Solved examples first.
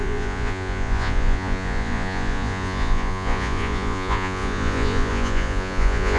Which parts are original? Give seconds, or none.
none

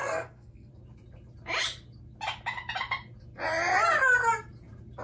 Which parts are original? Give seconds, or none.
0.7-5.0